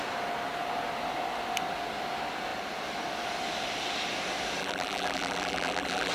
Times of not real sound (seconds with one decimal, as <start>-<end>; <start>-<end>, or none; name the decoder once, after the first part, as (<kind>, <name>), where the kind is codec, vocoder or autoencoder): 4.6-6.1 (vocoder, BigVGAN v2)